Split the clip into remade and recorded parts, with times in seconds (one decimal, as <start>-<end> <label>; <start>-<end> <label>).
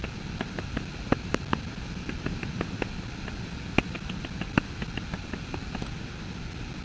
0.0-1.1 recorded; 1.1-1.7 remade; 1.7-6.8 recorded